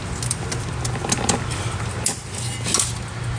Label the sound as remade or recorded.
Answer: recorded